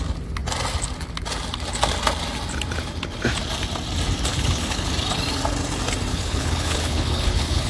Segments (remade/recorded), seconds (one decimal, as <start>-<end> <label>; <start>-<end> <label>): 0.0-4.3 recorded; 4.3-4.9 remade; 4.9-6.1 recorded; 6.1-7.7 remade

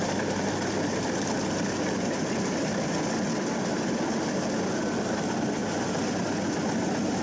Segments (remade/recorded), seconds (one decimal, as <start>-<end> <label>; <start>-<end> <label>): 0.0-7.2 recorded